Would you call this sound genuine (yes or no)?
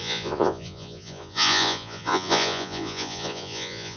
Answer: no